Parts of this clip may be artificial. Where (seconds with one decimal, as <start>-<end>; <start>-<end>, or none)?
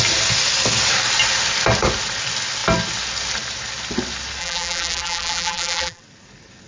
4.4-6.0